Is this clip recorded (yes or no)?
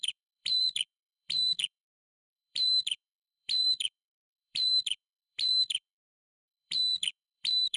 no